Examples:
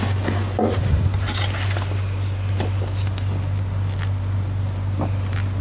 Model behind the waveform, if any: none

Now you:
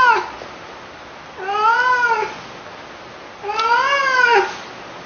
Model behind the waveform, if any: none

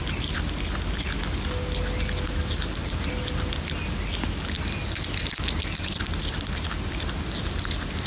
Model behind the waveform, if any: none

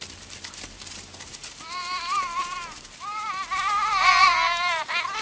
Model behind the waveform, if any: vocoder, BigVGAN v2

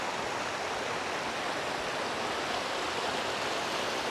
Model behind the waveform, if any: none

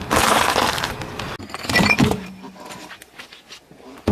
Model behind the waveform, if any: none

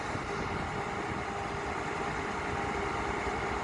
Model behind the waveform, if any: none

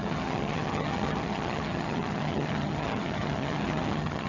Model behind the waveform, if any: vocoder, HiFi-GAN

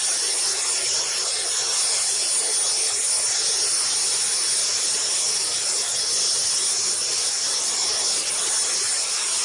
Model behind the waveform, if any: none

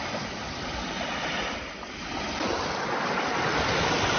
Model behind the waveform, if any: none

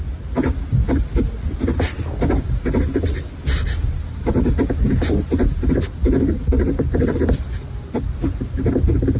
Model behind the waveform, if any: none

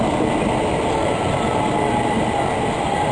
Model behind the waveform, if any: none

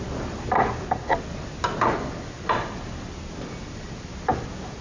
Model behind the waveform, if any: none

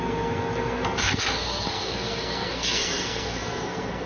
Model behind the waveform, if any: codec, SNAC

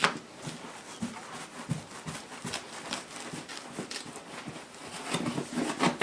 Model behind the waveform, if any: none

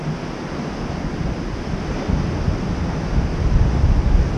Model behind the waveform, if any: none